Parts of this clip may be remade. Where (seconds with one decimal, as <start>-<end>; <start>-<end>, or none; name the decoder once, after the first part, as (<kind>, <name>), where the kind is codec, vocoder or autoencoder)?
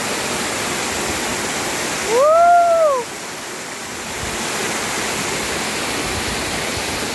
none